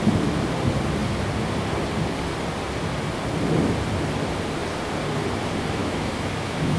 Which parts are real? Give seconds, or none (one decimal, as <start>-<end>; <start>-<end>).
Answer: 0.0-5.8